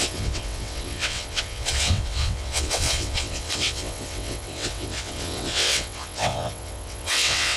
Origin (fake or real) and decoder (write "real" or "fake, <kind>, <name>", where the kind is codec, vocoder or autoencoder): fake, vocoder, WaveNeXt